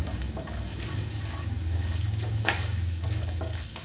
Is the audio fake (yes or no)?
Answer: yes